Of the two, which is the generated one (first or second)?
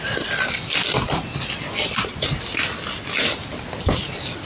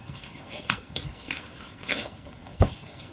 second